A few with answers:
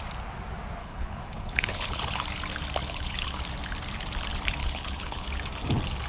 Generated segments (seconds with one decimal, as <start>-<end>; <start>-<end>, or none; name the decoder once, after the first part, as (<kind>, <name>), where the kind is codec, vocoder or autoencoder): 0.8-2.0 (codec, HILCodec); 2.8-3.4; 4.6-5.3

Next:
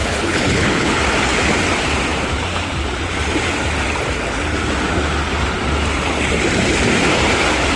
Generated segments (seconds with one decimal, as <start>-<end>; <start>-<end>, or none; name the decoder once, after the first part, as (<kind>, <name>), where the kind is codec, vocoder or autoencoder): 0.0-1.0 (codec, HILCodec)

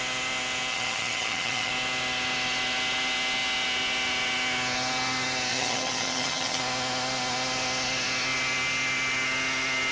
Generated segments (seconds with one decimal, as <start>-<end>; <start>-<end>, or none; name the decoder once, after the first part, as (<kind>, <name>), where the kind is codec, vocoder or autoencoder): 0.7-1.7 (vocoder, HiFi-GAN); 5.5-6.6

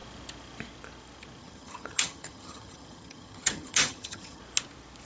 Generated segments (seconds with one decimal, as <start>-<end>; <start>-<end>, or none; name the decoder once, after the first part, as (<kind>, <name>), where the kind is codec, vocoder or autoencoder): 1.4-4.4 (vocoder, HiFi-GAN)

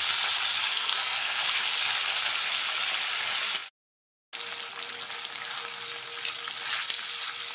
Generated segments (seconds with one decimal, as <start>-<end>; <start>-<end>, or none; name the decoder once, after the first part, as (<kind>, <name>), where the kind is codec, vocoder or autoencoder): 0.7-1.5 (codec, SNAC)

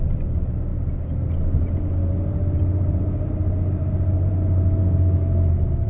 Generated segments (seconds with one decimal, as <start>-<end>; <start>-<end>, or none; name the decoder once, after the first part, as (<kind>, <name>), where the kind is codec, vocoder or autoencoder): 3.8-4.3 (codec, DAC); 4.8-5.5

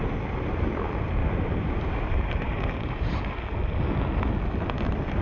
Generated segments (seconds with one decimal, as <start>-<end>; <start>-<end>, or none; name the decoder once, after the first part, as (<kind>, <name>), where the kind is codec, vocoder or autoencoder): 1.2-3.2 (vocoder, BigVGAN v2)

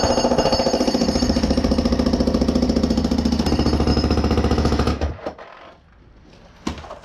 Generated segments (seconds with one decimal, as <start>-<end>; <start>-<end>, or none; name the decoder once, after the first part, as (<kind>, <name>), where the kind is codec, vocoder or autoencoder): 3.9-5.1 (autoencoder, DAC-VAE)